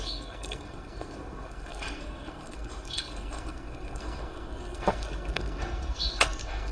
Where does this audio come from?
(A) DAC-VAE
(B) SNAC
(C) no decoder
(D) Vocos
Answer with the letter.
B